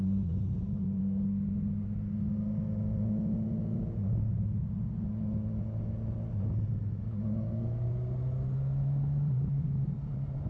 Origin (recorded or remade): recorded